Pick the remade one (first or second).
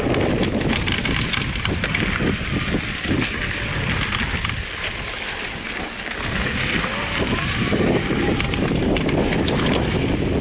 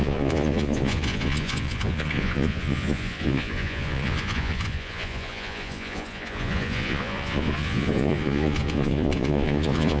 second